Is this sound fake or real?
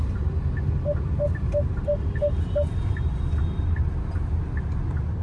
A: real